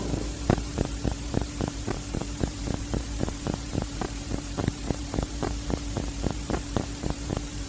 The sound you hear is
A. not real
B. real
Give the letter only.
A